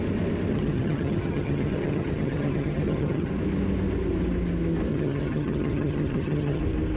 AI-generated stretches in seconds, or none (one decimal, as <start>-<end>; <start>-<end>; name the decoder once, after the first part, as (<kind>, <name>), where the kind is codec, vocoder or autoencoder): 0.5-3.3 (vocoder, HiFi-GAN); 4.9-6.6